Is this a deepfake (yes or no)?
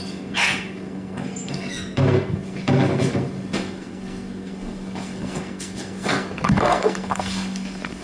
yes